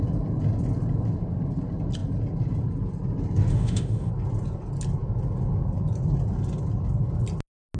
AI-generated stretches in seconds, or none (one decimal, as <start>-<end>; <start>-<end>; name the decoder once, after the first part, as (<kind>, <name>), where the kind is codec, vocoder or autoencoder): 3.5-4.1 (autoencoder, DAC-VAE)

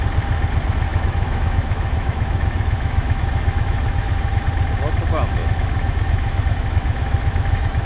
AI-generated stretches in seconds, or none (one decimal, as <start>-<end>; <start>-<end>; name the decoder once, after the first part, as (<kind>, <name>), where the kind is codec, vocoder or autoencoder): 0.9-4.4 (autoencoder, DAC-VAE); 5.4-7.9